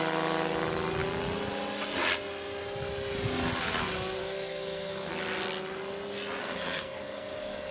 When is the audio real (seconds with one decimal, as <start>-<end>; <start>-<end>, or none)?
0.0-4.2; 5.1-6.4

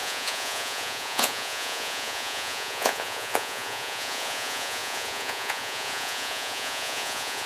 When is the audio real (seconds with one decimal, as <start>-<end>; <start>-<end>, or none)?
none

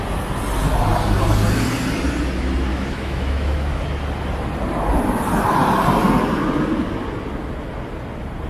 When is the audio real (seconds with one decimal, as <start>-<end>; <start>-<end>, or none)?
0.0-2.7; 3.8-8.5

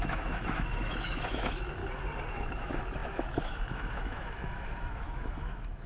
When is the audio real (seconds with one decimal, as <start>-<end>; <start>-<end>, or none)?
1.8-2.3